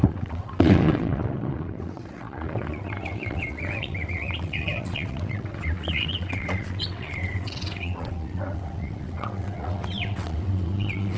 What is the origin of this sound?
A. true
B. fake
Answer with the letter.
B